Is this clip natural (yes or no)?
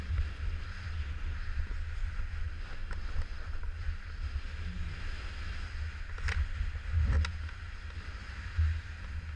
yes